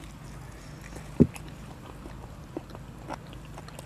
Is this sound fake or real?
real